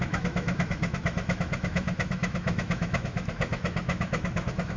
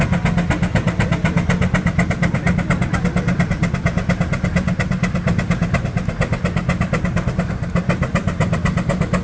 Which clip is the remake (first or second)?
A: first